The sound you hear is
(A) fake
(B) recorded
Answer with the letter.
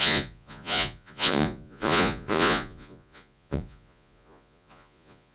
A